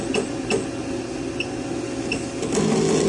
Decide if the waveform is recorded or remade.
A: recorded